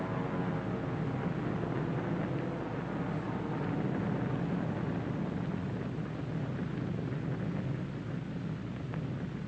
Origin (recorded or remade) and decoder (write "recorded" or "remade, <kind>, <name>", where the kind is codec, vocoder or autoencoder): recorded